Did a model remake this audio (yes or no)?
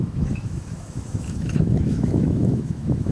yes